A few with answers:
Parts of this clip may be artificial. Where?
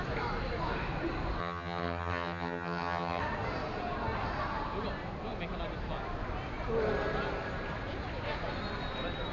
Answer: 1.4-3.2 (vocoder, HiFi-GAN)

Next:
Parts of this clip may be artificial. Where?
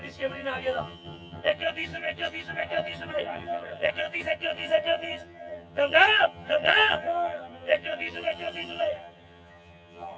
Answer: 0.0-10.2 (vocoder, HiFi-GAN)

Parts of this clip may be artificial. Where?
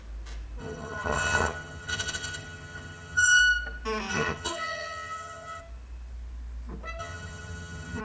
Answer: 0.6-3.4 (vocoder, HiFi-GAN); 4.1-5.6; 7.0-8.0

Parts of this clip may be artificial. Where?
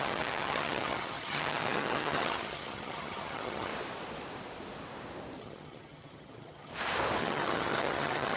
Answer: 0.0-3.7 (vocoder, HiFi-GAN); 5.4-6.7; 7.2-8.4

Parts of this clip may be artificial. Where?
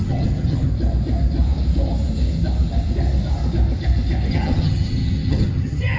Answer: 0.0-0.7 (vocoder, HiFi-GAN); 4.3-6.0